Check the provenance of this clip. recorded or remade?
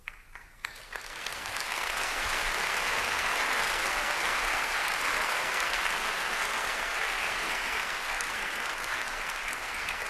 remade